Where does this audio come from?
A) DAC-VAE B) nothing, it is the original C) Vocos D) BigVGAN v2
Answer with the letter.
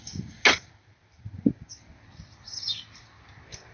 B